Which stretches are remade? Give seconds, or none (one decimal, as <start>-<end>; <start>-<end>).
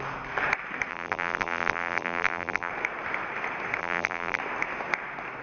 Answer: 0.9-2.7; 3.8-4.4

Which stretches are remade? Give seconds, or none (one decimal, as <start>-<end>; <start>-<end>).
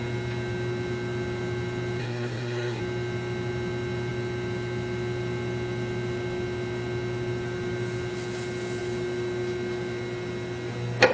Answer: 2.0-2.8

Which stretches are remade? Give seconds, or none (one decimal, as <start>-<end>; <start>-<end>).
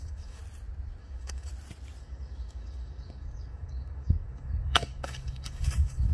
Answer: 0.0-0.4; 1.0-1.5; 2.0-6.1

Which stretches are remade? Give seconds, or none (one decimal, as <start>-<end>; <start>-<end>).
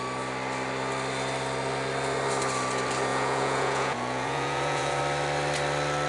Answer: 3.1-5.0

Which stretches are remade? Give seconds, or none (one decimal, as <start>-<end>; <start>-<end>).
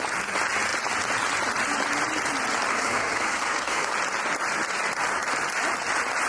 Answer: 2.7-3.9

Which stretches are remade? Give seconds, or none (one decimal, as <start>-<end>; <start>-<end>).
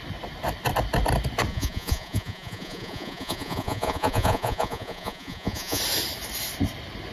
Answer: 1.5-5.8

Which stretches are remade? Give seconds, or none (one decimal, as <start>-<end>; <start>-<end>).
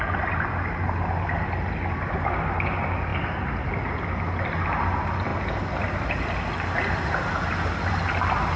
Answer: none